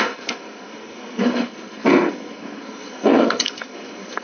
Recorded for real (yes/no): no